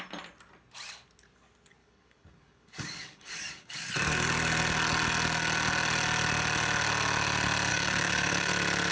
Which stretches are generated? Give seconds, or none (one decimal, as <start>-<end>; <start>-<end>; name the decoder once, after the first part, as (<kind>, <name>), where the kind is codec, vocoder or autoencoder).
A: 1.8-3.9 (codec, DAC); 7.7-8.5